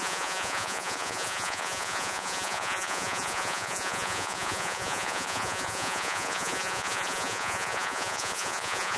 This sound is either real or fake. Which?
fake